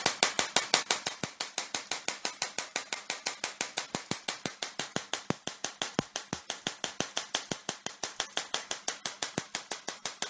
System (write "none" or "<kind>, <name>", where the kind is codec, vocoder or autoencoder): none